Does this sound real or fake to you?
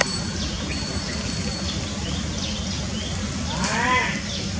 real